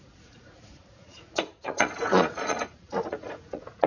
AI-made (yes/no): yes